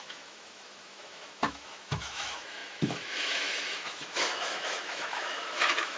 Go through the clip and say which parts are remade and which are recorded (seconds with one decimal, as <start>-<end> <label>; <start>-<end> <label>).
0.0-6.0 remade